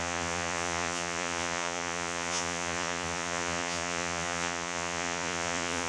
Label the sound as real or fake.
fake